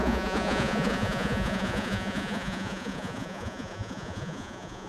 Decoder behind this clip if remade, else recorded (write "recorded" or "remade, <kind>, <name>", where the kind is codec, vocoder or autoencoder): remade, vocoder, Vocos